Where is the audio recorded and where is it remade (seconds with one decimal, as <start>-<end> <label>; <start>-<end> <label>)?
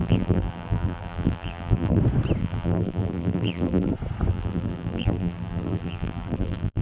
0.0-2.0 remade; 2.0-2.4 recorded; 2.4-3.9 remade; 3.9-4.3 recorded; 4.3-6.8 remade